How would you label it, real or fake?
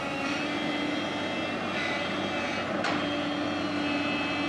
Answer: real